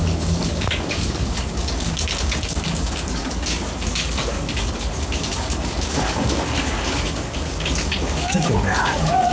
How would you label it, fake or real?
fake